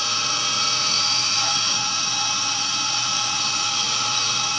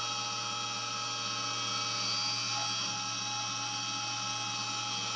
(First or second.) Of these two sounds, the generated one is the first